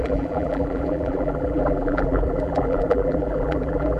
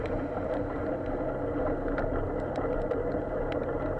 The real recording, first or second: second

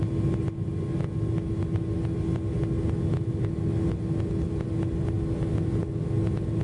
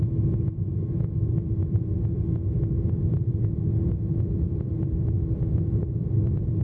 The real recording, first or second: first